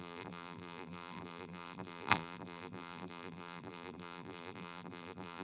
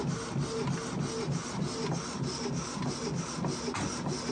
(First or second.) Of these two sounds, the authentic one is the second